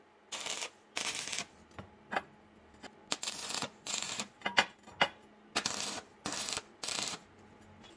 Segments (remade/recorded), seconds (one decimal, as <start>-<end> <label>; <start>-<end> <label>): 0.0-3.0 recorded; 3.0-4.1 remade; 4.1-8.0 recorded